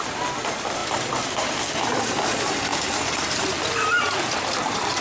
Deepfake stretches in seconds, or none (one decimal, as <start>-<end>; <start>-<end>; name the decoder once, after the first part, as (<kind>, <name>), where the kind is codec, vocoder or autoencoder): 0.0-0.8 (vocoder, BigVGAN v2); 2.0-2.7; 3.6-5.0